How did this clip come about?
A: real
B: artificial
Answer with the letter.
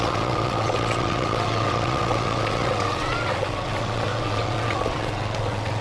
B